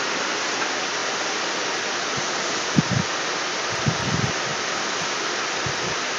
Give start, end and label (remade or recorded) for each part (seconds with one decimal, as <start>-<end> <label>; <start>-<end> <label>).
0.0-6.2 recorded